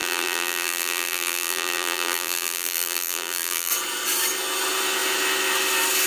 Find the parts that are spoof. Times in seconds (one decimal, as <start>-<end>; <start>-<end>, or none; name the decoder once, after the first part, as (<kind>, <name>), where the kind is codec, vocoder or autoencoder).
0.0-3.7 (vocoder, BigVGAN v2)